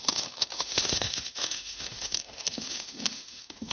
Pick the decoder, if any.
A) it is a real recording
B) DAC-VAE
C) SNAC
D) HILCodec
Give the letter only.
B